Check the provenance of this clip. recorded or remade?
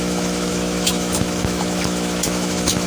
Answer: remade